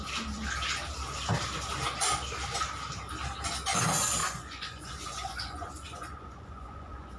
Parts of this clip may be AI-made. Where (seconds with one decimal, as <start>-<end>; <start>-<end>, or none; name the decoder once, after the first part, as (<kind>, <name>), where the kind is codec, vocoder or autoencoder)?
4.2-7.2 (vocoder, Vocos)